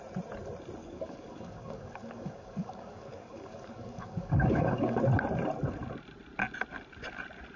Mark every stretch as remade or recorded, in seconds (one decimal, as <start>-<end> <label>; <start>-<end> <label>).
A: 0.0-0.8 recorded; 0.8-5.0 remade; 5.0-7.6 recorded